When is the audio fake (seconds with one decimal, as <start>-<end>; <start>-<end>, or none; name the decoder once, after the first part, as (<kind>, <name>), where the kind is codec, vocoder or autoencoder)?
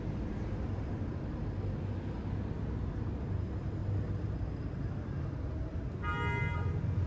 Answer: none